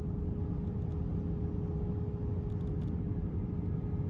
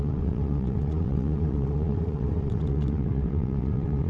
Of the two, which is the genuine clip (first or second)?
first